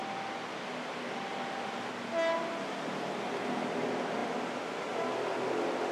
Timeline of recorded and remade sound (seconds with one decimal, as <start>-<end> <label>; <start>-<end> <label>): 0.0-5.9 recorded